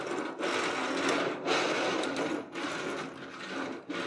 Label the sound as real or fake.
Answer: real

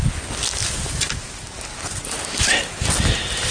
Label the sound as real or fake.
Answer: real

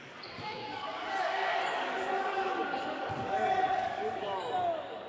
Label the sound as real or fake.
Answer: fake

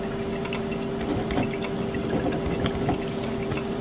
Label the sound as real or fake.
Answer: real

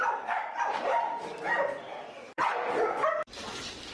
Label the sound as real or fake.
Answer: fake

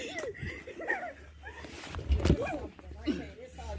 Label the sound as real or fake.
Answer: real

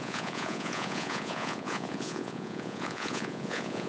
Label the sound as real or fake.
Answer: fake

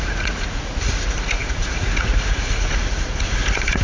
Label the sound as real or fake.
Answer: fake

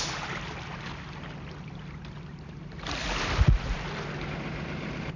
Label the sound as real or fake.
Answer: real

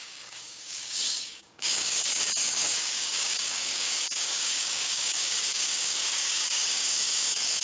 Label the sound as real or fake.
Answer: fake